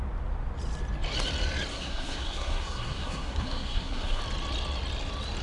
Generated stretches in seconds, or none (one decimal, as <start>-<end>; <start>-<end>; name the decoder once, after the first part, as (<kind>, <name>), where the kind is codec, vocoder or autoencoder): 1.7-4.2 (codec, SNAC)